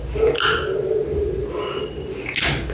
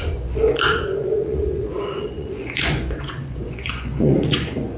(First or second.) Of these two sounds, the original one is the first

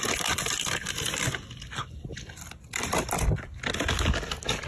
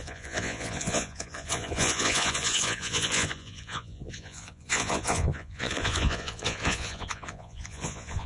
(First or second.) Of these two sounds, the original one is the first